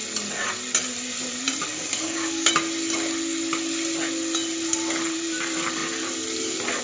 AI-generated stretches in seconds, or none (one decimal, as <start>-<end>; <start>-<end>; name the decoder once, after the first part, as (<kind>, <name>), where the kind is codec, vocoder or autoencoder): 1.7-2.5 (codec, DAC)